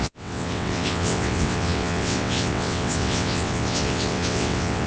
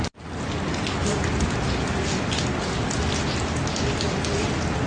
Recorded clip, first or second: second